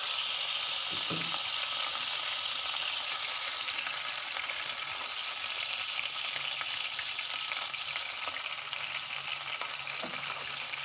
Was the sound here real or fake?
real